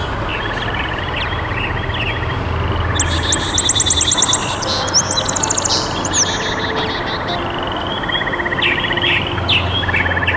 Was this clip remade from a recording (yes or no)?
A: no